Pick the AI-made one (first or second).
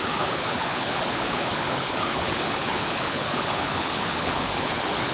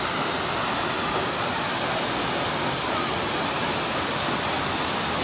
first